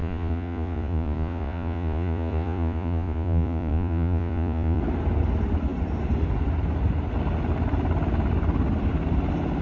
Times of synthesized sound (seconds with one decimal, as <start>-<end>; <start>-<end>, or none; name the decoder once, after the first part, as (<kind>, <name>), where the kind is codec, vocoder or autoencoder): 0.0-4.8 (vocoder, Vocos)